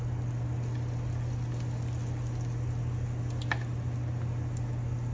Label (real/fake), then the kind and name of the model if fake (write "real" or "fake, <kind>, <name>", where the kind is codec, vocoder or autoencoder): real